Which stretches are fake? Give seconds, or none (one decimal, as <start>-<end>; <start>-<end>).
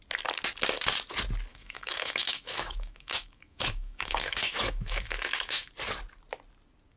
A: 1.5-5.7